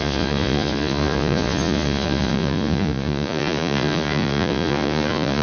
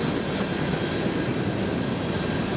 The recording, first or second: second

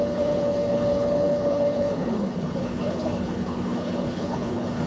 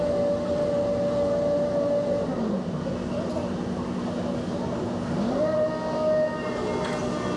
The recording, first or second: second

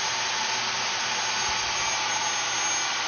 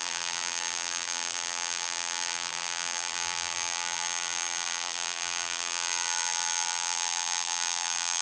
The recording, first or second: first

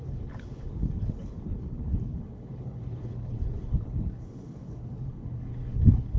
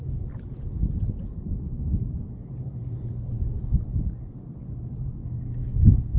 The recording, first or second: second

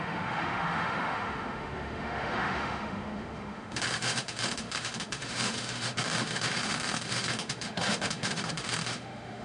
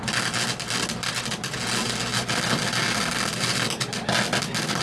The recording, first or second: second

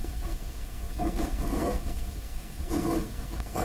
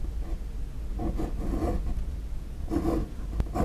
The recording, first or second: second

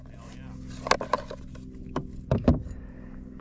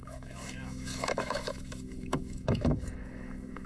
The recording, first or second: first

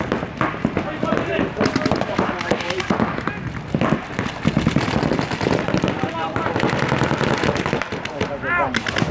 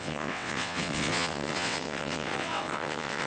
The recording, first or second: first